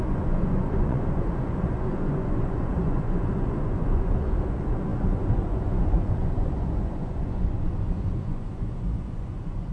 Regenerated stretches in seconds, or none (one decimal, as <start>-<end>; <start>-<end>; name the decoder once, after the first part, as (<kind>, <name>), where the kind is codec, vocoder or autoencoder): 0.0-9.7 (vocoder, Vocos)